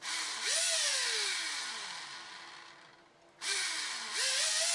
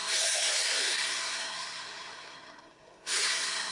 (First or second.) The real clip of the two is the first